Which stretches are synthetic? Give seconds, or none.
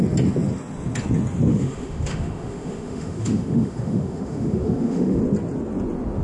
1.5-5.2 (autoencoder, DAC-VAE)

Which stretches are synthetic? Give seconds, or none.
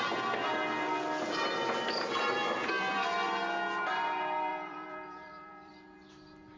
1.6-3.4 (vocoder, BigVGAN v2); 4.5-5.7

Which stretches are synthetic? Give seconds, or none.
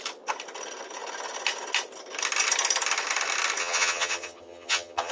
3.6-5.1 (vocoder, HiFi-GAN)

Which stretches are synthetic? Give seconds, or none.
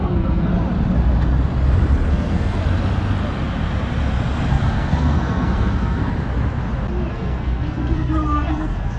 0.0-0.5 (codec, SNAC); 2.1-2.6; 4.5-6.1; 7.1-9.0